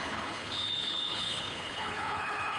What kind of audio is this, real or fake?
fake